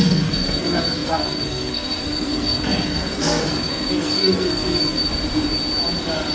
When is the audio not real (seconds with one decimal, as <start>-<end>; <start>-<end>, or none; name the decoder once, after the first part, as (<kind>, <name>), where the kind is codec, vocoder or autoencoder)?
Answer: 0.0-5.0 (codec, SNAC)